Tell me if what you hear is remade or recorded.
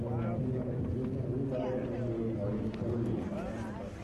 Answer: recorded